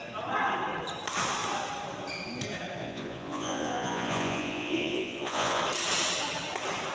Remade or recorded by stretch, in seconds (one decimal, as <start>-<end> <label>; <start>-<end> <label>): 0.0-2.8 recorded; 2.8-5.6 remade; 5.6-6.9 recorded